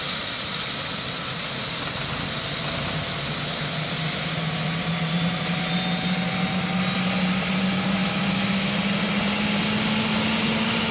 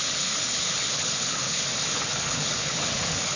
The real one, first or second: first